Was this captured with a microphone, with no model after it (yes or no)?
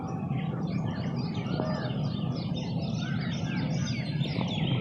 yes